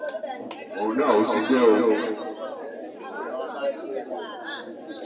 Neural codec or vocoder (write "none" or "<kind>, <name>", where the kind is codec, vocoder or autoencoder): none